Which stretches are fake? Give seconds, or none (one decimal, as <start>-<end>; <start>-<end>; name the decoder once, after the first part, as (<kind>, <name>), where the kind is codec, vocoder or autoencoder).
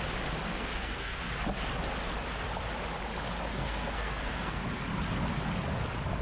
0.5-1.3 (codec, SNAC); 3.5-4.6